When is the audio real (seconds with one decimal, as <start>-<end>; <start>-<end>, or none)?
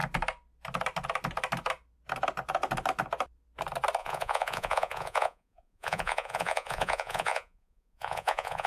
0.0-4.0